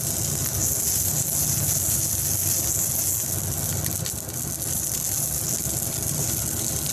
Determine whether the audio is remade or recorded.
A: recorded